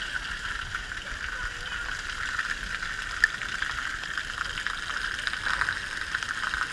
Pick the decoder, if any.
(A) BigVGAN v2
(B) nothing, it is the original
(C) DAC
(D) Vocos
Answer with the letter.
B